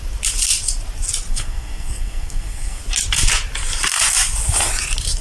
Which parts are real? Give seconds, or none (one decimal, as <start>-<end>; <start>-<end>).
0.0-1.3; 2.8-5.2